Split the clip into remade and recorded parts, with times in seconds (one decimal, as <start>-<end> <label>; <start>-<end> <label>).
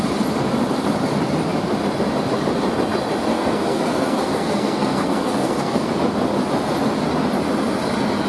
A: 0.0-3.3 recorded; 3.3-5.9 remade; 5.9-8.3 recorded